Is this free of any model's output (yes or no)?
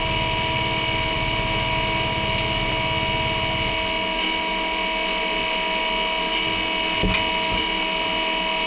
yes